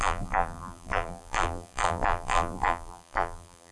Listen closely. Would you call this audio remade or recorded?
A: remade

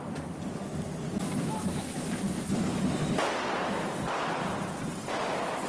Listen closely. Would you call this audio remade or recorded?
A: recorded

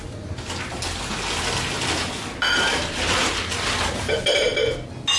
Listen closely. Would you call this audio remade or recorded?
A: recorded